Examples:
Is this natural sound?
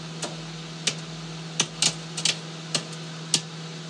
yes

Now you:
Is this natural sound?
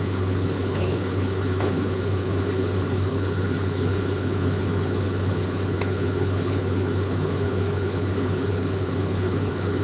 no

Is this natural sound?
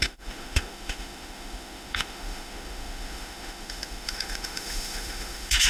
no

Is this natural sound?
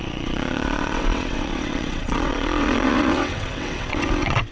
no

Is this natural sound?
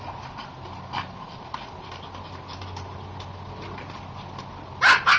yes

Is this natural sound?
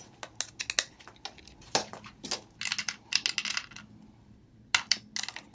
yes